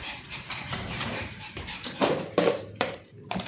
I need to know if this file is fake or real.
fake